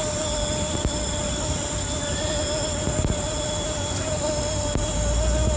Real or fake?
real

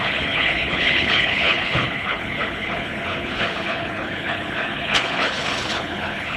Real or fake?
fake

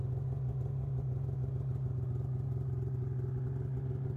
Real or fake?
real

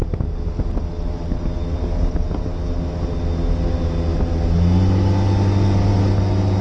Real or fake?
real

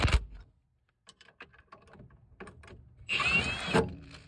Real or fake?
real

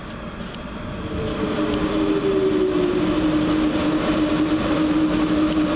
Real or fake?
real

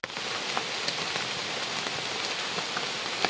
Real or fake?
real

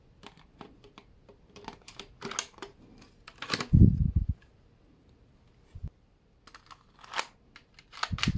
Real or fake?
real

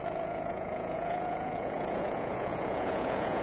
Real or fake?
fake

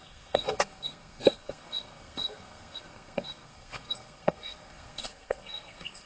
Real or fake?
fake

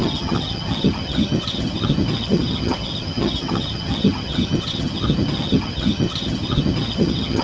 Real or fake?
fake